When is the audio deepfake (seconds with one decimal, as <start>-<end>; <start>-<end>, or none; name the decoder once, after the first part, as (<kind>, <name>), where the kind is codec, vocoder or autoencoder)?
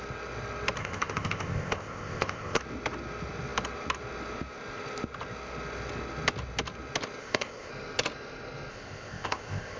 0.8-2.6 (codec, ZipCodec); 7.2-7.7; 8.7-9.8